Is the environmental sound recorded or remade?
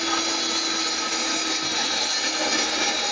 recorded